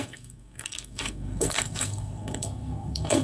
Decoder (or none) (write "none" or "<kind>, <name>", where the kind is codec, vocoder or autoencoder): codec, SNAC